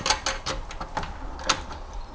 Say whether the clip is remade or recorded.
recorded